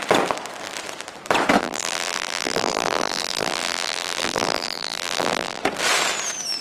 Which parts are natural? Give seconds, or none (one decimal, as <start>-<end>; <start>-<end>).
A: 0.0-1.6; 5.6-6.6